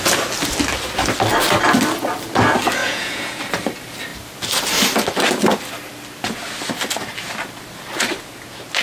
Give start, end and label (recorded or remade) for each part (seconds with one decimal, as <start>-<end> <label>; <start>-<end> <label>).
0.0-2.8 recorded; 2.8-3.4 remade; 3.4-8.8 recorded